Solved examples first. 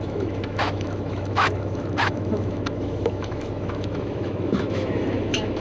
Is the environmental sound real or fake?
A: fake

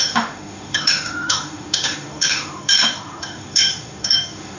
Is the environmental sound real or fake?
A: fake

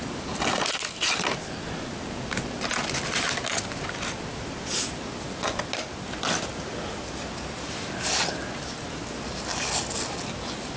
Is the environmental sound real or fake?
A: real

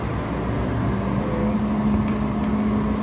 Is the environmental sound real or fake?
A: real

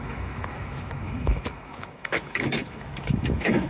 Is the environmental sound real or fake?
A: fake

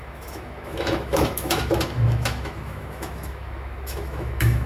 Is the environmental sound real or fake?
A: fake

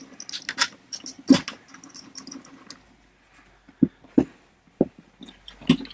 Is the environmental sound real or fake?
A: real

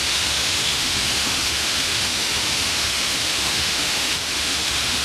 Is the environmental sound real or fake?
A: fake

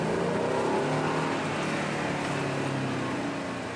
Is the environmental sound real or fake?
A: real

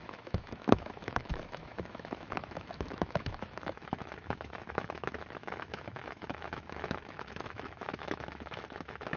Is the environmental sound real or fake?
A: fake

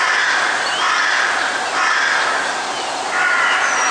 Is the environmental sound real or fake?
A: real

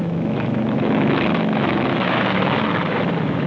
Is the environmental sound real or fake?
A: fake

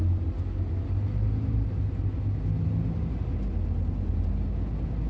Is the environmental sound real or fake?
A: real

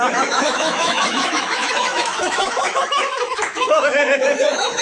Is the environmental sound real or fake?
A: fake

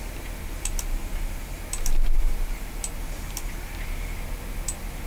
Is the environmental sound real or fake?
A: real